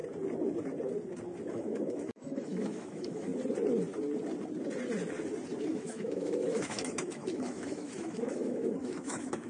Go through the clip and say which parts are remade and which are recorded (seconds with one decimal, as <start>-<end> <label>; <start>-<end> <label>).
0.0-1.5 recorded; 1.5-3.3 remade; 3.3-5.7 recorded; 5.7-9.5 remade